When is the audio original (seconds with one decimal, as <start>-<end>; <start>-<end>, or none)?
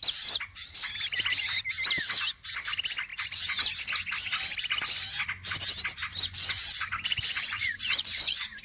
0.0-6.1